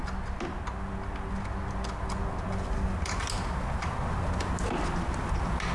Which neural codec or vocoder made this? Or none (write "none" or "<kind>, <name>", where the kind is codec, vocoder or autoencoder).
none